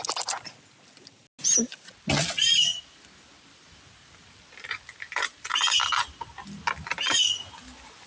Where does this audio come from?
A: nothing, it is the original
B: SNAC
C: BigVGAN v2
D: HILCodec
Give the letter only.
A